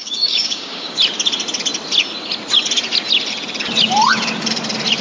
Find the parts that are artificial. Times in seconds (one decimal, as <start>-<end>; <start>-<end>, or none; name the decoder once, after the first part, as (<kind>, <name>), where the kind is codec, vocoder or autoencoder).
0.0-1.0 (codec, DAC)